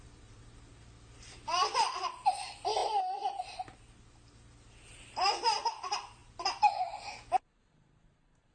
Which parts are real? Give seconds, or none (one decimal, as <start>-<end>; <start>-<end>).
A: 0.0-8.5